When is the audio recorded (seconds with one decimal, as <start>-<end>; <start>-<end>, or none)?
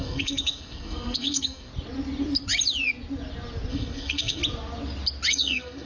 1.7-3.7; 4.4-5.3